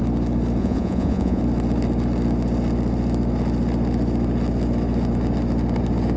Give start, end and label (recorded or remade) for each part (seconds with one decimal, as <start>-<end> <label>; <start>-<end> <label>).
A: 0.0-0.6 recorded; 0.6-1.4 remade; 1.4-6.2 recorded